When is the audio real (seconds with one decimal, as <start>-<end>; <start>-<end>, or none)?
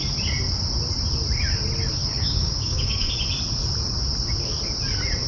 0.0-2.0; 3.1-5.3